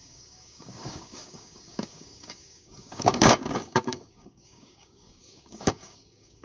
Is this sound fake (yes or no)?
yes